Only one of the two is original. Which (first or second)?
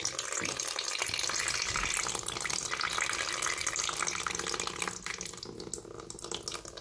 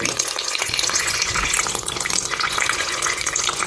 first